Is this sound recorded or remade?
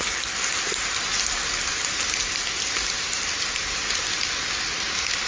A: recorded